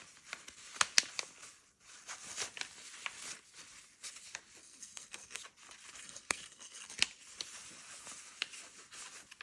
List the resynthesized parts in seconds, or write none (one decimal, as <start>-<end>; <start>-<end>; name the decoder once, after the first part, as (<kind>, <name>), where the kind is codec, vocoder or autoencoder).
4.6-5.4 (codec, SNAC); 6.0-6.9